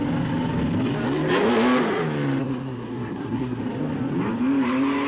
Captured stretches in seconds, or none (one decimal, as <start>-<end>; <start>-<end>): 0.0-2.4; 3.6-5.1